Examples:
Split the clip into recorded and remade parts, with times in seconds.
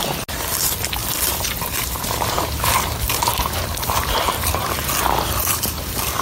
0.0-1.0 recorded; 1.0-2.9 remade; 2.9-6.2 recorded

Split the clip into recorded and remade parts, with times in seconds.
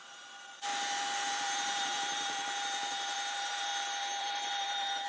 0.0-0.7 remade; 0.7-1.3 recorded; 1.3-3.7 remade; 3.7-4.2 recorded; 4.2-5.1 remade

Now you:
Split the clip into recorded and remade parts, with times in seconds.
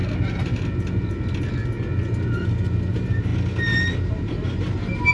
0.0-2.9 recorded; 2.9-3.3 remade; 3.3-4.1 recorded; 4.1-5.1 remade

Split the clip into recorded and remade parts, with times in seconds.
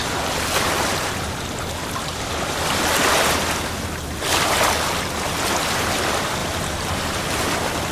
0.0-6.4 recorded; 6.4-7.4 remade; 7.4-7.9 recorded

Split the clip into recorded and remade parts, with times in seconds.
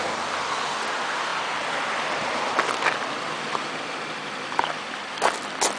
0.0-5.8 recorded